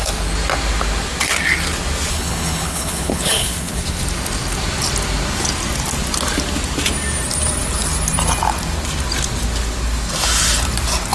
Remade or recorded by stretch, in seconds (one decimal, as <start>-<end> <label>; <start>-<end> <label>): 0.0-2.1 recorded; 2.1-3.8 remade; 3.8-11.1 recorded